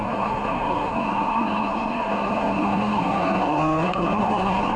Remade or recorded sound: remade